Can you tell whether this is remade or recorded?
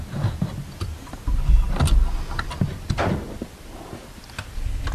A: recorded